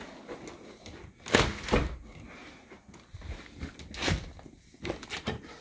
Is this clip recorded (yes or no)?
yes